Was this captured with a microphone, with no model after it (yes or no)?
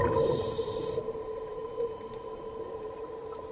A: no